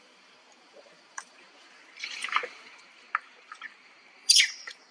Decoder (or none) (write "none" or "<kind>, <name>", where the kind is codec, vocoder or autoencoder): vocoder, BigVGAN v2